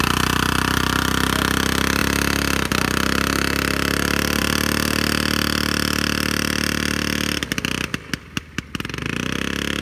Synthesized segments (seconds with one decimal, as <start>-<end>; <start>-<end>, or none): none